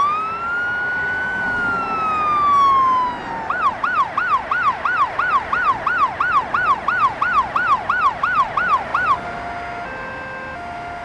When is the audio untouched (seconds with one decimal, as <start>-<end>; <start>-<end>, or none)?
0.0-11.0